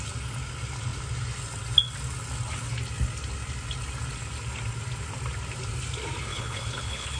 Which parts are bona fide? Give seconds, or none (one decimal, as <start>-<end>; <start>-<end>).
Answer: 0.0-6.3